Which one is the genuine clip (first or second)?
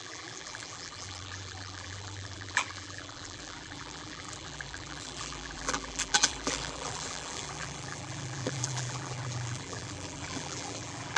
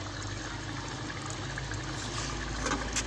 second